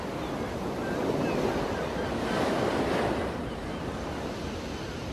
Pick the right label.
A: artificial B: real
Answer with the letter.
B